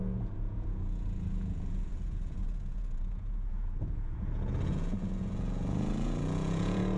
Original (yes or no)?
no